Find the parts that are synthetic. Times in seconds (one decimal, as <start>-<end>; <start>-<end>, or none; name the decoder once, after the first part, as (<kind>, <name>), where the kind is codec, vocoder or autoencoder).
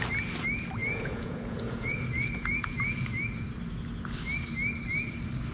0.8-3.0 (vocoder, Vocos)